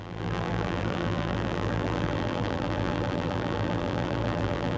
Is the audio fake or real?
fake